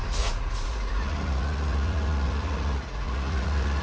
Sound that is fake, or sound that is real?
fake